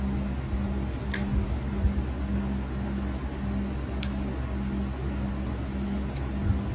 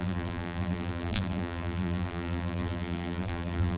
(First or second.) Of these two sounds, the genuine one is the first